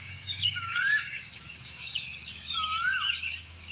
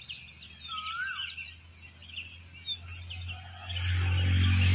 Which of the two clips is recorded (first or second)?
second